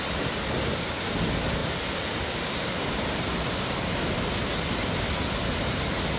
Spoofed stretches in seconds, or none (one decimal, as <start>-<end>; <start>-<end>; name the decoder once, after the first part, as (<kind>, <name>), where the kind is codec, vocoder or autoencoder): none